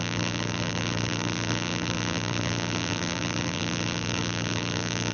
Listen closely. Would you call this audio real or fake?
fake